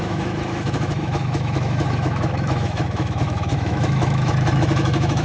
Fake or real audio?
fake